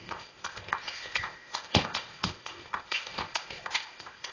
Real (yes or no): no